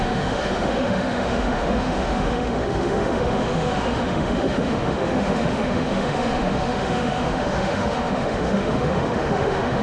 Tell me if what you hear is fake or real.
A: fake